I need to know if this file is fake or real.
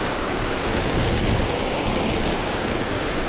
fake